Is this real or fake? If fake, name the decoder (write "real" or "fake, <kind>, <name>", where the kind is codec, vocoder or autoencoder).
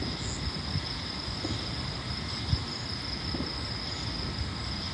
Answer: real